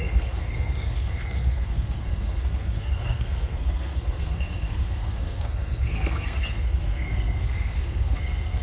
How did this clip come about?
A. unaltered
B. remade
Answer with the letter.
B